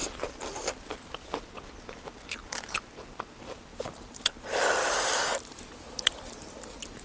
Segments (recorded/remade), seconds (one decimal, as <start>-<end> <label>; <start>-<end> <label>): 0.0-7.0 recorded